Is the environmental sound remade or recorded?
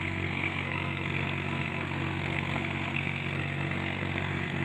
remade